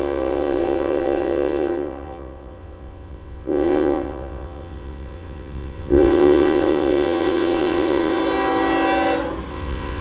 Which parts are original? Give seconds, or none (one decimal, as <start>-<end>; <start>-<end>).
8.2-9.5